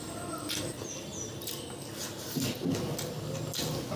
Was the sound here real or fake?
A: real